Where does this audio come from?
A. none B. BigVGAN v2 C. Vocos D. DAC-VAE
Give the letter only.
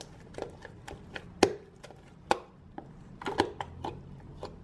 A